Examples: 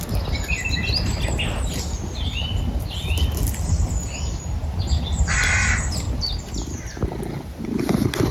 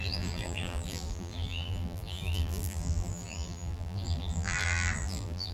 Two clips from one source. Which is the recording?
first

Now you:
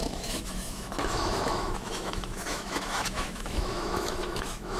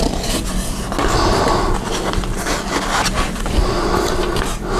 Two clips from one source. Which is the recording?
second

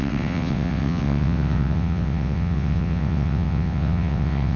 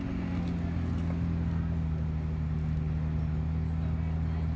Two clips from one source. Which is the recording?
second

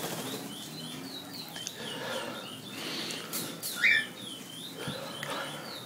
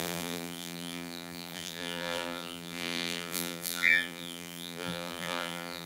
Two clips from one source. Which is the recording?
first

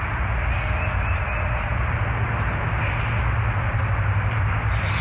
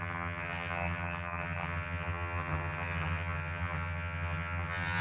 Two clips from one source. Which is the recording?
first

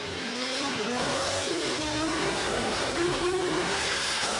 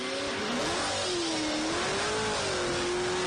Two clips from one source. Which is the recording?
second